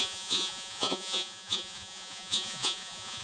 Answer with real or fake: fake